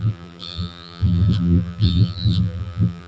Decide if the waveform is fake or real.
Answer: fake